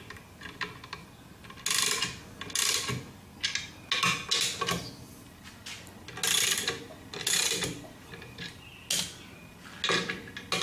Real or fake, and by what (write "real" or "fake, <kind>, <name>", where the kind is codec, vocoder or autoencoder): real